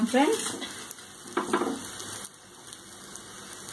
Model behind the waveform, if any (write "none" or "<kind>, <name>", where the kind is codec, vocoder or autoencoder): none